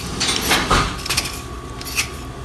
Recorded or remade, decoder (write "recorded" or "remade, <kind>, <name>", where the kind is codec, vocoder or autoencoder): recorded